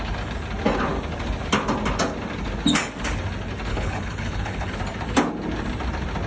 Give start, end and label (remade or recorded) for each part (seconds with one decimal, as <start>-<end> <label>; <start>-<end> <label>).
0.0-3.7 recorded; 3.7-4.7 remade; 4.7-6.3 recorded